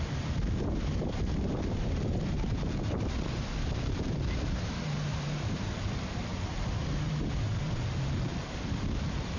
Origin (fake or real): fake